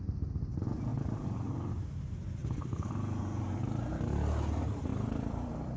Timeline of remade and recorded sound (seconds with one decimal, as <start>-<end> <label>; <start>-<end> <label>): 0.0-0.9 recorded; 0.9-1.7 remade; 1.7-2.4 recorded; 2.4-3.2 remade; 3.2-4.9 recorded; 4.9-5.8 remade